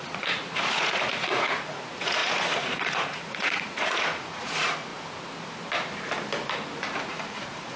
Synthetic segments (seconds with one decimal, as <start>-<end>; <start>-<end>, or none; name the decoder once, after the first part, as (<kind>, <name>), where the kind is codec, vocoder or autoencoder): 0.0-4.9 (vocoder, Vocos); 7.1-7.8